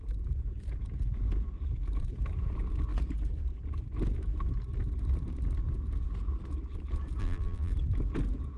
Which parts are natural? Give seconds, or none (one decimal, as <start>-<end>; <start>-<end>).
0.0-7.2; 7.7-8.6